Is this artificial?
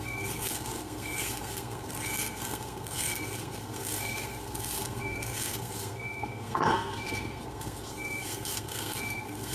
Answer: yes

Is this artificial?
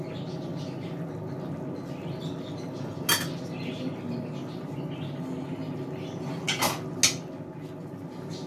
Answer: no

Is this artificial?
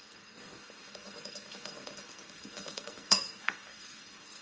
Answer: yes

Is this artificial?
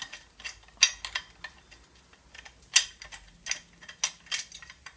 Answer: no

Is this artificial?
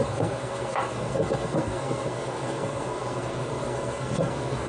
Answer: yes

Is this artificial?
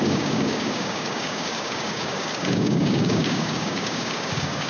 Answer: yes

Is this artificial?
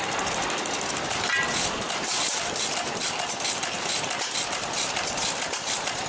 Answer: no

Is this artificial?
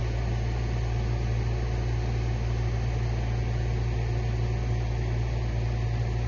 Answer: no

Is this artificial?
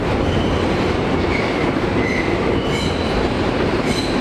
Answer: no